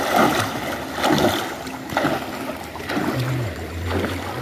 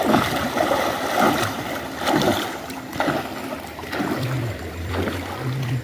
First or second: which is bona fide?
first